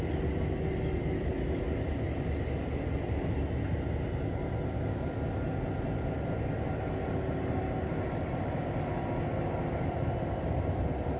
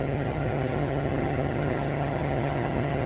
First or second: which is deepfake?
second